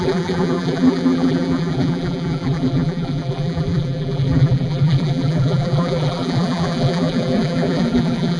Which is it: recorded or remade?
remade